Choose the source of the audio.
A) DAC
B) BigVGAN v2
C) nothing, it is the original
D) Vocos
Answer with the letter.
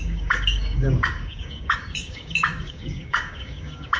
A